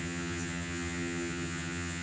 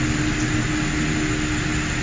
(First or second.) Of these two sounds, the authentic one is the second